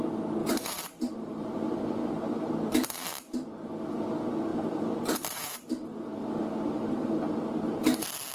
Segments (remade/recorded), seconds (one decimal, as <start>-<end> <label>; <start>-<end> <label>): 0.0-0.4 recorded; 0.4-1.8 remade; 1.8-4.5 recorded; 4.5-6.4 remade; 6.4-8.3 recorded

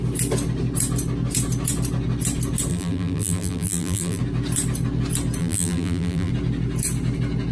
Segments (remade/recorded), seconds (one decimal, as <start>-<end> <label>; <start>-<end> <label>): 0.0-2.7 recorded; 2.7-4.2 remade; 4.2-5.4 recorded; 5.4-6.3 remade; 6.3-7.5 recorded

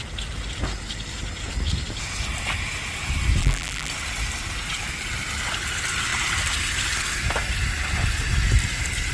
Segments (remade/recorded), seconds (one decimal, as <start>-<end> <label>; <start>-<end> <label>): 0.0-3.4 recorded; 3.4-3.9 remade; 3.9-9.1 recorded

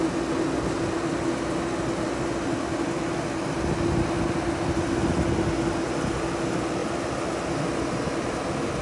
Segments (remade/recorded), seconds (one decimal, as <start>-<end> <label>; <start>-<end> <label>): 0.0-6.8 recorded; 6.8-7.3 remade; 7.3-8.8 recorded

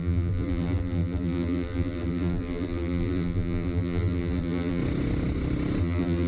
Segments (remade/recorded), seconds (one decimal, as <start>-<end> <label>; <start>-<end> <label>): 0.0-4.8 remade; 4.8-5.8 recorded; 5.8-6.3 remade

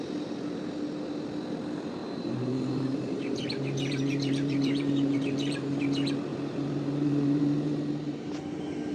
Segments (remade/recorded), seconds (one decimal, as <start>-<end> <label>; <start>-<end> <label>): 0.0-2.0 recorded; 2.0-5.8 remade; 5.8-6.3 recorded; 6.3-8.3 remade; 8.3-8.9 recorded

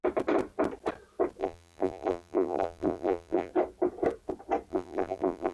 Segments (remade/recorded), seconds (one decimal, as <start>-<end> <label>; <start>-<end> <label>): 0.0-1.4 recorded; 1.4-3.5 remade; 3.5-4.7 recorded; 4.7-5.5 remade

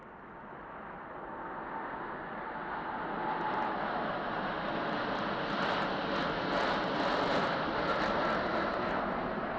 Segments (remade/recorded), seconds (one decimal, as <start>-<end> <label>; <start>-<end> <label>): 0.0-9.6 recorded